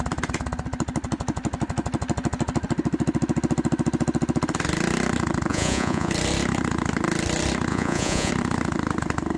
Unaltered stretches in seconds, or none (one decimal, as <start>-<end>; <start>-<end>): 0.0-5.5; 6.1-7.7; 8.3-9.4